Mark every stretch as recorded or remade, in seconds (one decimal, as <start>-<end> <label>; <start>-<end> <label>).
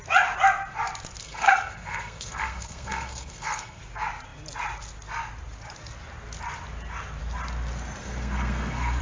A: 0.0-1.2 recorded; 1.2-3.8 remade; 3.8-8.0 recorded; 8.0-9.0 remade